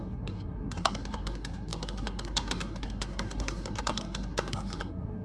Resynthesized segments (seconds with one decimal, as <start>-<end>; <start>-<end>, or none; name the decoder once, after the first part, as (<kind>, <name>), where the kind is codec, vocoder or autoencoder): 0.0-5.2 (codec, SNAC)